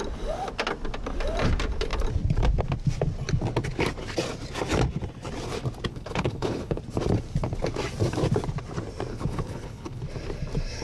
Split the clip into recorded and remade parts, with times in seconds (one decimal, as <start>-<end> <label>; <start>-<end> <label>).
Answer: 0.0-5.9 recorded; 5.9-6.8 remade; 6.8-9.1 recorded; 9.1-10.0 remade; 10.0-10.8 recorded